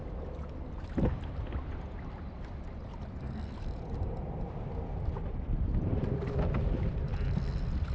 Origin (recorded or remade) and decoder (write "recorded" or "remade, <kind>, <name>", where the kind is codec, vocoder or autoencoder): recorded